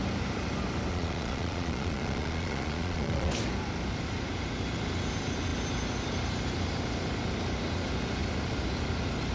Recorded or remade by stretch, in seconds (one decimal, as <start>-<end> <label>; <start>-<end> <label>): 0.0-0.9 recorded; 0.9-3.3 remade; 3.3-9.3 recorded